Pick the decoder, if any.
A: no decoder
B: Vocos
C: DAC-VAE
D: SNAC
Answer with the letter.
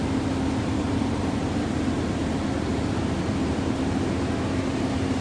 A